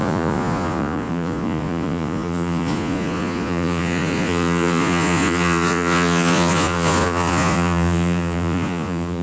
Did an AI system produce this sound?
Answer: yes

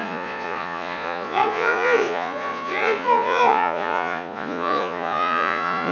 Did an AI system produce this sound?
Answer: yes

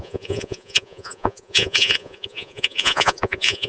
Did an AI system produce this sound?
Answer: yes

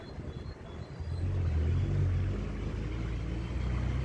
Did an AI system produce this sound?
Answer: no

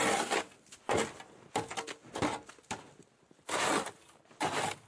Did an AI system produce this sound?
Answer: no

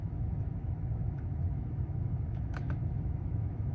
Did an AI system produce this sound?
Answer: yes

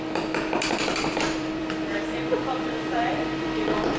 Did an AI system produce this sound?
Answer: yes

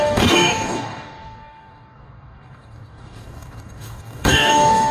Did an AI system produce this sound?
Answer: yes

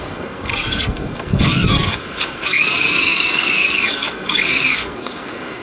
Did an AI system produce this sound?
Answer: yes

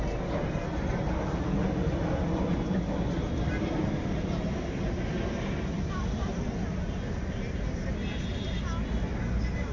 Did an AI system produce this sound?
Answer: no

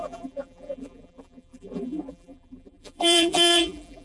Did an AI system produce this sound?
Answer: yes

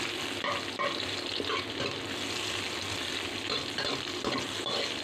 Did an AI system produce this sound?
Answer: no